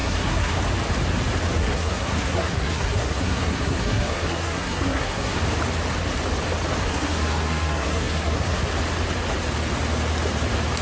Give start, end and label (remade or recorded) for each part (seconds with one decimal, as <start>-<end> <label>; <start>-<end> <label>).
0.0-0.6 remade; 0.6-1.6 recorded; 1.6-5.4 remade; 5.4-6.8 recorded; 6.8-8.6 remade; 8.6-10.8 recorded